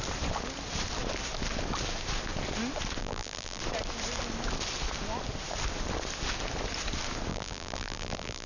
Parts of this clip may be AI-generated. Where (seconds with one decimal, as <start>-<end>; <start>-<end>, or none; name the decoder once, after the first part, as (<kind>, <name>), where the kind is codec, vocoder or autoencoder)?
3.0-3.6 (vocoder, BigVGAN v2); 7.3-8.5